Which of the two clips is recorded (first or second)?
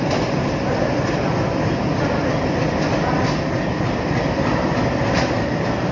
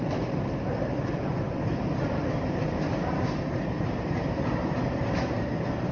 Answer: first